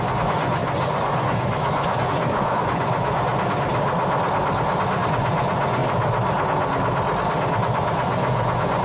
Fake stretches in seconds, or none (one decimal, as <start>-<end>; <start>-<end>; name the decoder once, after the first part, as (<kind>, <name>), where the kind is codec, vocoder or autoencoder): 0.0-3.3 (vocoder, Vocos); 5.1-5.8; 7.6-8.8